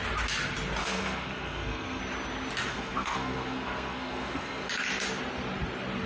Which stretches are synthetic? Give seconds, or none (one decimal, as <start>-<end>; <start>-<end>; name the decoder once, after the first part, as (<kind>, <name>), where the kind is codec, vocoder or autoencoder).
0.8-2.0 (codec, SNAC); 2.7-4.7

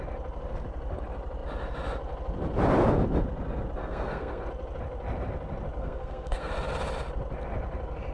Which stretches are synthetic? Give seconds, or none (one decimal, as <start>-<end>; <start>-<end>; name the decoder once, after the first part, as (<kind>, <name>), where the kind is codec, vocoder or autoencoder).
3.8-4.4 (codec, SNAC); 5.8-6.5

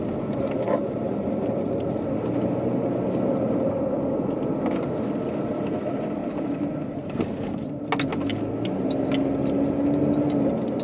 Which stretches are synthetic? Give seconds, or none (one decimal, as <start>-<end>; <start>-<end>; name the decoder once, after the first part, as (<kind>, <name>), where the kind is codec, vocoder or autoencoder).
0.8-1.8 (vocoder, BigVGAN v2); 6.2-7.9

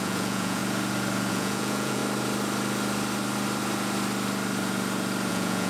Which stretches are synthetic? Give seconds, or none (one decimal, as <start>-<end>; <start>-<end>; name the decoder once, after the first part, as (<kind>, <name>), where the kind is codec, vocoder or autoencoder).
0.0-0.6 (vocoder, Vocos); 1.3-2.0; 5.3-5.7